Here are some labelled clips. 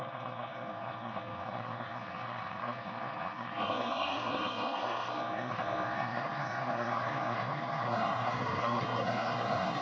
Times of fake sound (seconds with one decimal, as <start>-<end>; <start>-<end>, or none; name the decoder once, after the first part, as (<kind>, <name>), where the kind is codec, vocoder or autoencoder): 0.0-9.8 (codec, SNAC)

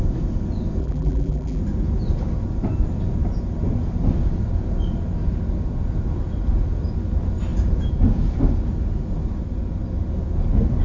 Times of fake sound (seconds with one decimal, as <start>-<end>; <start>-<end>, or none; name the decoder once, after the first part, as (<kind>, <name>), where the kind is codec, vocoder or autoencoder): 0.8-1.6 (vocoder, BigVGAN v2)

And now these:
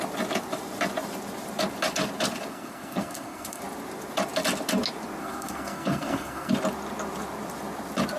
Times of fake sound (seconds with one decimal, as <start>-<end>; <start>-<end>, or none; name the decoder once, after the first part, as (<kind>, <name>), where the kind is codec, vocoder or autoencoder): 2.5-3.6 (codec, SNAC); 5.2-6.5

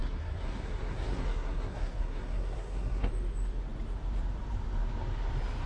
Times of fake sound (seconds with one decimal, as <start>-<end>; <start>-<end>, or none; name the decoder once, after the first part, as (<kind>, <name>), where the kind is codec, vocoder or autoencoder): 0.0-3.1 (codec, SNAC)

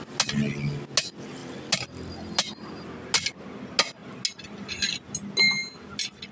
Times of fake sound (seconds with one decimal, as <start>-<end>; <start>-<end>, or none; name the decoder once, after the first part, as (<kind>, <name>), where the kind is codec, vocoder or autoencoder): none

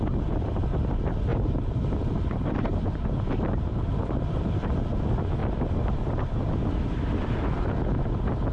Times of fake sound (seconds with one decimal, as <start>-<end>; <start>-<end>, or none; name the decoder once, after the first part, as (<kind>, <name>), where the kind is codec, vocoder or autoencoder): 1.3-4.4 (vocoder, BigVGAN v2); 5.4-6.0

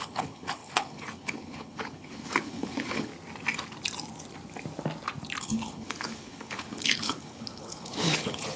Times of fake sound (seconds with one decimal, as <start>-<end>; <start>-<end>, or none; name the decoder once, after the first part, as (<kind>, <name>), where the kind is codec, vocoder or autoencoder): 0.0-3.1 (codec, HILCodec); 5.4-8.6